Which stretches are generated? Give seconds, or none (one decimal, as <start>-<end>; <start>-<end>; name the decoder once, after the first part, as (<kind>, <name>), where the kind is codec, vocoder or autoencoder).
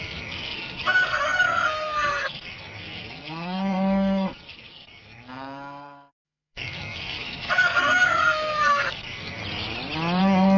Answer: 0.0-9.4 (codec, SNAC); 10.2-10.6